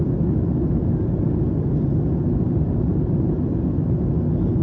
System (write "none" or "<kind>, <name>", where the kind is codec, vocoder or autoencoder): none